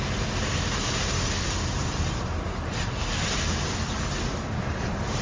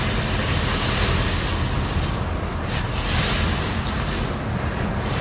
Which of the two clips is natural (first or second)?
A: second